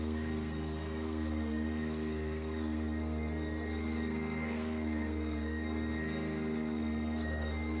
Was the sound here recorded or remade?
remade